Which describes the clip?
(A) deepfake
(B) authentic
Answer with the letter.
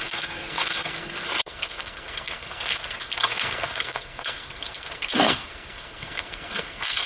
A